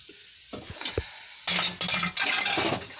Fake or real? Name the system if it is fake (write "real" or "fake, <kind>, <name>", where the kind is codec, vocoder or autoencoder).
real